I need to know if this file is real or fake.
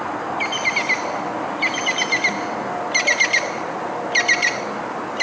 real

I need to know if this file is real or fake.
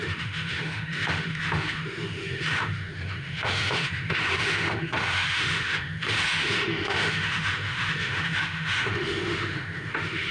fake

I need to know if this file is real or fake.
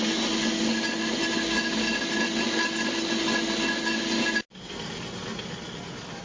real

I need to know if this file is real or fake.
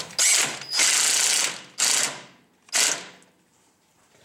real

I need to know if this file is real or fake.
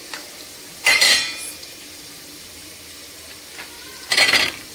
fake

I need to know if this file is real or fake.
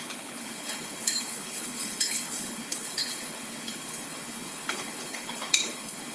fake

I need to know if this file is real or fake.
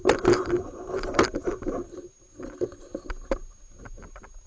fake